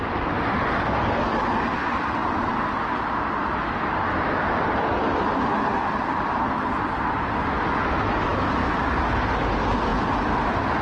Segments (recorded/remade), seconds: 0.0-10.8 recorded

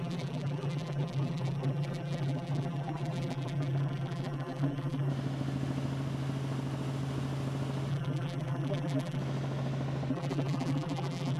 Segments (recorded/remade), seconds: 0.0-5.1 remade; 5.1-7.9 recorded; 7.9-9.2 remade; 9.2-10.1 recorded; 10.1-11.4 remade

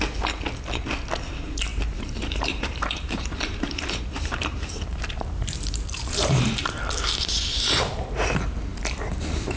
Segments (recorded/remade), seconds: 0.0-1.7 recorded; 1.7-6.8 remade; 6.8-9.6 recorded